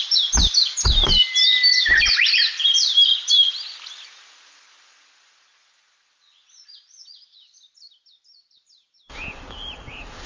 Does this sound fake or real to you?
real